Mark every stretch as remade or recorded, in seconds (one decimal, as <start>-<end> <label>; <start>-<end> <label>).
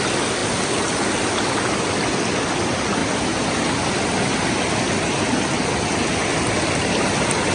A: 0.0-7.5 recorded